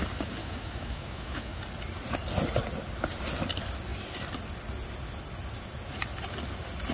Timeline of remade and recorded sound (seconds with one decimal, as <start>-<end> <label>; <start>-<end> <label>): 0.0-0.4 recorded; 0.4-1.6 remade; 1.6-6.9 recorded